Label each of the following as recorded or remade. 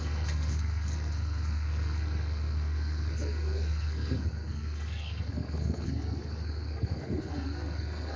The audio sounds remade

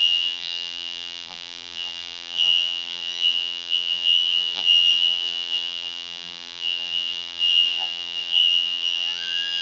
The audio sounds remade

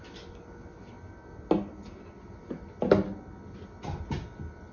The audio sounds recorded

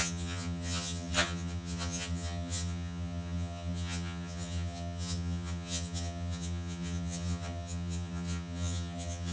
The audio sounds remade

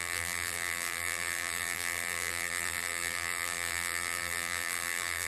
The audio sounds remade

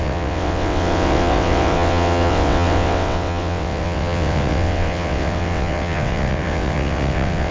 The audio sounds remade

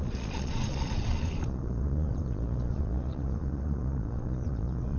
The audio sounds remade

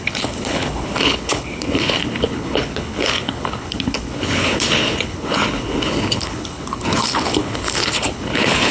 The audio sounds remade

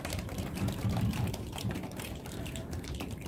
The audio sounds remade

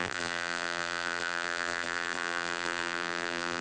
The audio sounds remade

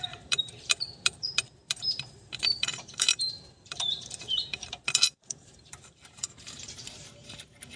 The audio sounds remade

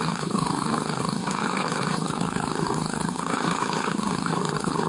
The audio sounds remade